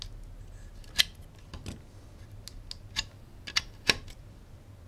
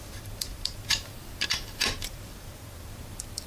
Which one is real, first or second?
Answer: first